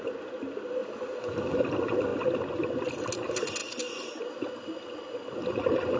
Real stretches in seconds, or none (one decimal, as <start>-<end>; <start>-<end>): 0.0-6.0